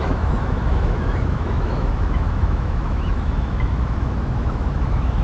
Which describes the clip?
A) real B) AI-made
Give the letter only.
B